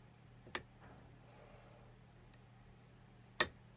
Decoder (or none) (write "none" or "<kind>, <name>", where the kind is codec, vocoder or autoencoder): none